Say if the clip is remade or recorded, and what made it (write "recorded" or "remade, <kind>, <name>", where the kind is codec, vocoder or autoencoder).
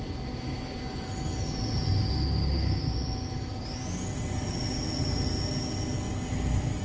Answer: recorded